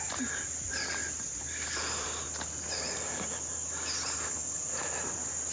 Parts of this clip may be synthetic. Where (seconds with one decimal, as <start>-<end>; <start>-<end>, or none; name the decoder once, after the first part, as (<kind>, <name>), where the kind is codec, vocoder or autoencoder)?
none